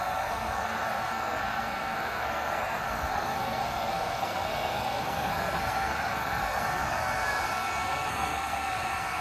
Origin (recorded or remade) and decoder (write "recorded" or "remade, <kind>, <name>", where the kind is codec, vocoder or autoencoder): remade, codec, SNAC